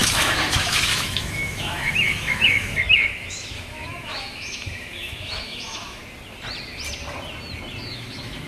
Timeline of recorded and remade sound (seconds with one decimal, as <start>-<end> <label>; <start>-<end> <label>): 0.0-6.0 remade; 6.0-7.9 recorded; 7.9-8.5 remade

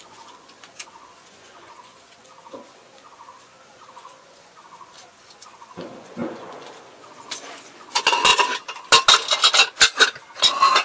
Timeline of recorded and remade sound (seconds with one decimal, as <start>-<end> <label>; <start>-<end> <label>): 0.0-8.3 remade; 8.3-10.4 recorded; 10.4-10.8 remade